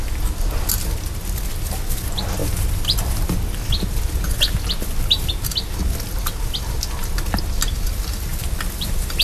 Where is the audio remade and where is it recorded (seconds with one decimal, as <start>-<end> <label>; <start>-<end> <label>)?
0.0-9.2 recorded